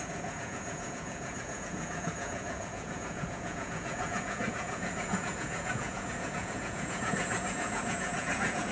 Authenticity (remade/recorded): remade